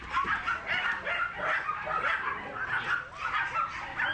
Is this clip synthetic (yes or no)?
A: no